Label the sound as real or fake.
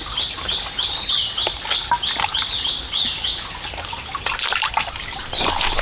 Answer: real